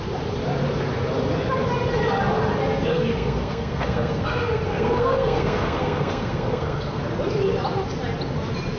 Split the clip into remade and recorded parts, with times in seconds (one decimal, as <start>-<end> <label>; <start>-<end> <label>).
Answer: 0.0-2.9 recorded; 2.9-7.0 remade; 7.0-8.8 recorded